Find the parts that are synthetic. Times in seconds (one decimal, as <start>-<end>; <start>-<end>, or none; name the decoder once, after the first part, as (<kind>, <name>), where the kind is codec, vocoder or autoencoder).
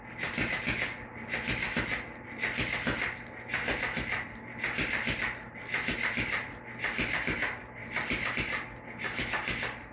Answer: none